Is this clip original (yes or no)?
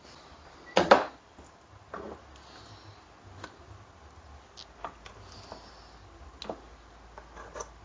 yes